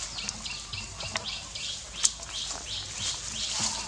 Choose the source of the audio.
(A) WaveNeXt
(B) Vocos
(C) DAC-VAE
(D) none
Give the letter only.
D